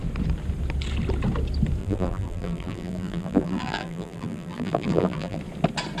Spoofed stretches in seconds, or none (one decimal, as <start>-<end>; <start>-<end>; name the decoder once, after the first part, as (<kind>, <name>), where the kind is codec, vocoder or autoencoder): 1.8-5.4 (vocoder, BigVGAN v2)

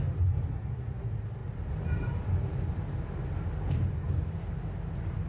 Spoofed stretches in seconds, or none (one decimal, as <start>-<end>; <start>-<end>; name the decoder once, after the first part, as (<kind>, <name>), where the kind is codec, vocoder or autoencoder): 1.4-4.1 (vocoder, BigVGAN v2)

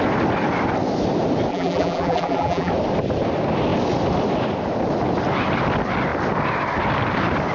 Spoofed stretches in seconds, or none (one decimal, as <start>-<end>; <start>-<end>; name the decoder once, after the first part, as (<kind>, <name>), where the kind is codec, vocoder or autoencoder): 1.5-2.7 (vocoder, BigVGAN v2)

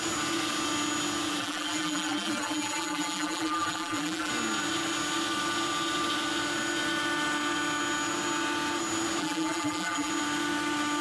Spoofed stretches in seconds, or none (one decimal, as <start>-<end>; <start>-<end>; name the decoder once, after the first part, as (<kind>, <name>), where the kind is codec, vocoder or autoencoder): 1.4-4.3 (vocoder, BigVGAN v2); 9.2-10.1

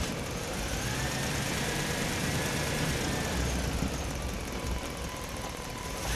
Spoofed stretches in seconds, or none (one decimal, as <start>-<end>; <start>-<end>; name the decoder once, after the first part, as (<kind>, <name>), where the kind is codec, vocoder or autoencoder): 0.0-2.9 (vocoder, BigVGAN v2); 3.8-6.2

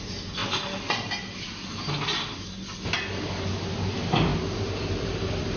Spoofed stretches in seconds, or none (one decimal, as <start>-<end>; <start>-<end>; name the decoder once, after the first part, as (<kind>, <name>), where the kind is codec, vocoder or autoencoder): 0.0-0.4 (vocoder, BigVGAN v2); 3.8-5.6

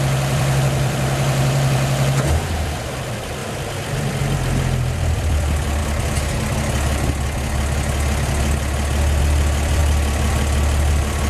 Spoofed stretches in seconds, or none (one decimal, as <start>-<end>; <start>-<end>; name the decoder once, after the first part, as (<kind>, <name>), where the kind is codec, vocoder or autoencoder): 0.0-5.8 (vocoder, BigVGAN v2); 9.2-11.3